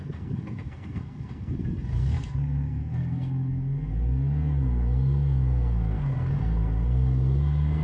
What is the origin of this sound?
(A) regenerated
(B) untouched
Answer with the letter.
A